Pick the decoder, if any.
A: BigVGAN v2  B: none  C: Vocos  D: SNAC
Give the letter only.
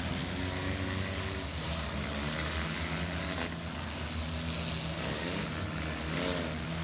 B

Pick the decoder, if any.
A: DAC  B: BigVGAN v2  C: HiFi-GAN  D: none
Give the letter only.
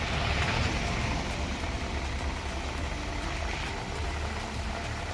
D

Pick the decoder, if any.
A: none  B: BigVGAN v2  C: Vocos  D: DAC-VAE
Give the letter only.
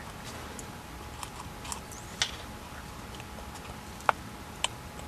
A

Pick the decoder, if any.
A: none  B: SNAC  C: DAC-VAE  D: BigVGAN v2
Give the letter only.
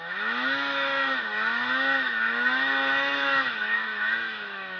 C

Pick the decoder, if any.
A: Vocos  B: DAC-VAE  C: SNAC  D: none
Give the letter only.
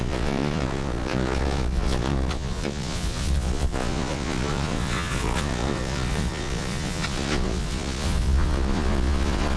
A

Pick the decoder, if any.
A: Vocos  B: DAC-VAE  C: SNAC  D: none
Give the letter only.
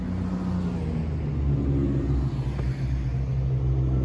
D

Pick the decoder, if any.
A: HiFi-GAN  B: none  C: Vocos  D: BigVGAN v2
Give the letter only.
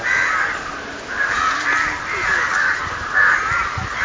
B